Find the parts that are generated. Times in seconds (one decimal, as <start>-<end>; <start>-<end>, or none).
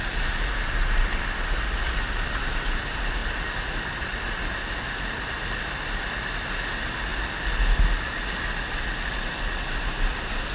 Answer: none